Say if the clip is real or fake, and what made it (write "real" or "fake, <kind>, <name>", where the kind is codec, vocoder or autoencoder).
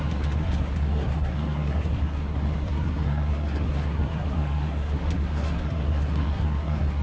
fake, codec, SNAC